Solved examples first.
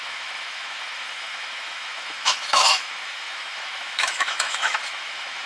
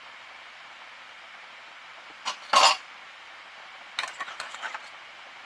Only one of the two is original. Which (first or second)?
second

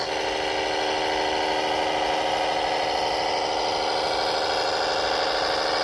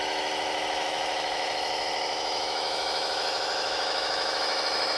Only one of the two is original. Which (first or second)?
first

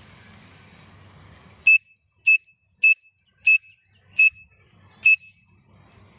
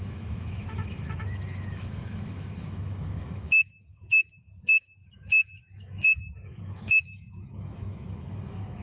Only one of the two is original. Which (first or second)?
first